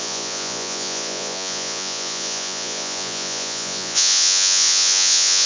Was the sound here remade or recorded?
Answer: remade